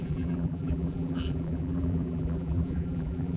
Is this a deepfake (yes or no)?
yes